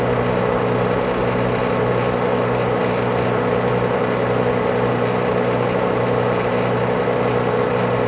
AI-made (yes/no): no